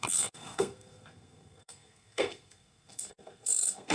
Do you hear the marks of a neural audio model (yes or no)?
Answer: yes